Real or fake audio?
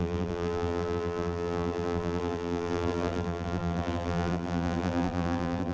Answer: fake